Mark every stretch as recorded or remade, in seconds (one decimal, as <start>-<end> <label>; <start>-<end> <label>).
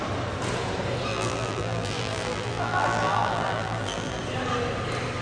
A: 0.0-1.1 recorded; 1.1-4.2 remade; 4.2-5.2 recorded